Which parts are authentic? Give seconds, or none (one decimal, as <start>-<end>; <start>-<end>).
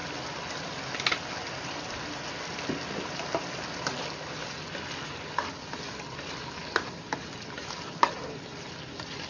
0.0-9.3